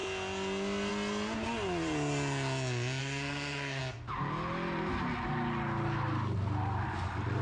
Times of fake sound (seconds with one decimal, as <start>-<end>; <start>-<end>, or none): 3.0-3.8

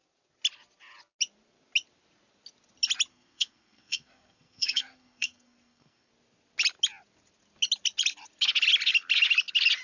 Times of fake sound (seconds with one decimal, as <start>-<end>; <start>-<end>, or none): 3.1-6.1

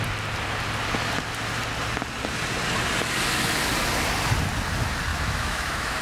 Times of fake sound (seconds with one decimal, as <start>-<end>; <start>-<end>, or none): 5.1-6.0

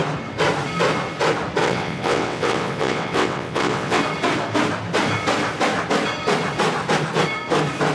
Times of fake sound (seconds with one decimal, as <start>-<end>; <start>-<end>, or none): 1.6-4.0

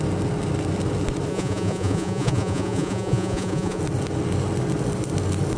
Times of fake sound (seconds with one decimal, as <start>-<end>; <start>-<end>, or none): 1.3-3.8

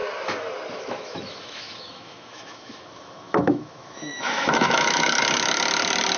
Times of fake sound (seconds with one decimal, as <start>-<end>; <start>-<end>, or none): 0.7-5.2